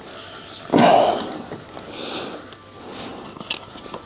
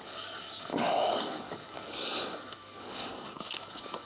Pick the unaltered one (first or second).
first